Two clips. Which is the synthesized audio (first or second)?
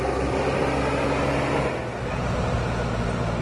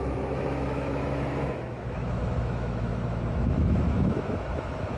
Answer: second